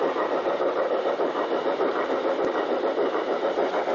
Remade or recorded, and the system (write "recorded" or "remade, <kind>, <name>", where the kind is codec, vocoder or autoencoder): remade, vocoder, BigVGAN v2